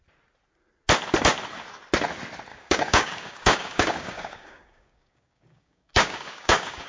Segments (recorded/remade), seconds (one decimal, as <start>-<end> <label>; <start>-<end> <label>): 0.0-2.5 recorded; 2.5-6.9 remade